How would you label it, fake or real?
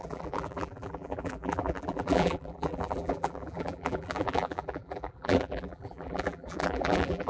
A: fake